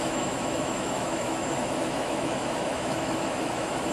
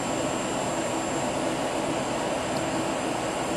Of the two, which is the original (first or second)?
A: second